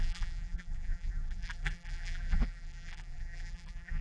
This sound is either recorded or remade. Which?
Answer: remade